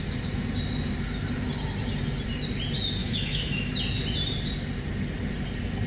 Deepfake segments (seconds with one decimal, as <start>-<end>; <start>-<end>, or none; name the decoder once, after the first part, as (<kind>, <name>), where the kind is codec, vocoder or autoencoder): 3.0-3.7 (autoencoder, DAC-VAE)